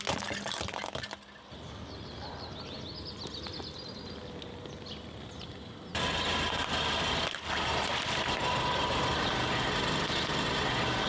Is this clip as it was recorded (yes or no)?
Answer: yes